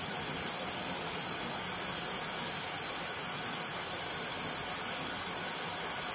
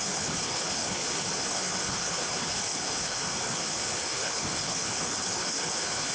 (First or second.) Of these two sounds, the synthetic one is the second